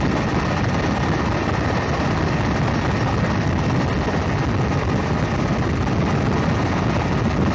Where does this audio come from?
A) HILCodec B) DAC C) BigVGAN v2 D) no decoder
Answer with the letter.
D